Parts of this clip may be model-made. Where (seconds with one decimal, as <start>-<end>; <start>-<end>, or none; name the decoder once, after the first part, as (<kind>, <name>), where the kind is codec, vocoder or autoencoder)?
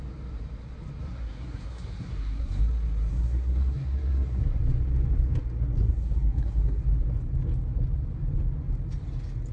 1.0-2.6 (codec, SNAC); 3.1-4.6; 5.8-6.8